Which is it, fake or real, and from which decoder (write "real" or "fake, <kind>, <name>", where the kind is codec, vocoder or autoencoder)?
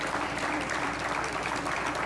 fake, vocoder, BigVGAN v2